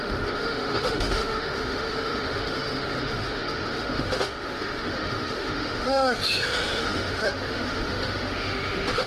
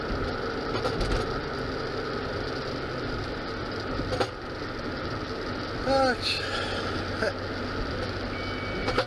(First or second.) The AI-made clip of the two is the first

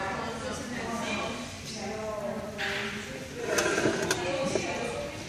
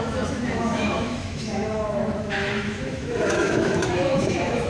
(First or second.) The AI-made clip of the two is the second